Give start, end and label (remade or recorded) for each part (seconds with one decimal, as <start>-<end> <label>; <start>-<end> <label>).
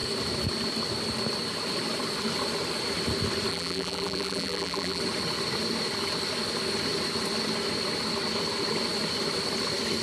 0.0-3.5 recorded; 3.5-5.0 remade; 5.0-10.0 recorded